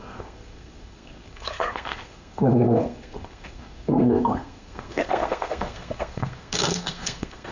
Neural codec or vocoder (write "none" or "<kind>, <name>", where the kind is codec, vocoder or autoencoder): codec, SNAC